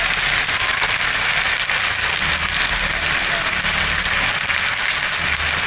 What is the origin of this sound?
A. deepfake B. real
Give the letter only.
B